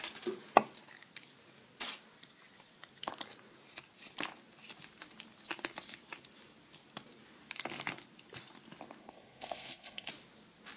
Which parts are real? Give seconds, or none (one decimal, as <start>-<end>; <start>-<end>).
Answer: 0.0-9.0; 10.1-10.8